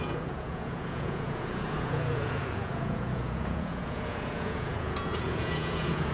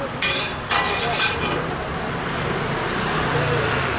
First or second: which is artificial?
first